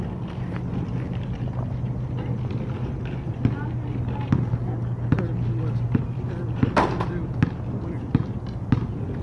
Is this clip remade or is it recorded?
recorded